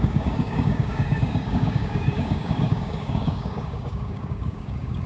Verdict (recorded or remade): remade